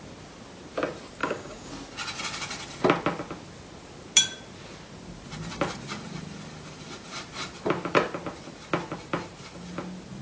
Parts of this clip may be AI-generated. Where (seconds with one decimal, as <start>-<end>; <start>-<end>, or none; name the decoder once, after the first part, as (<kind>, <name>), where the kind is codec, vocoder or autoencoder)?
1.2-1.7 (codec, DAC)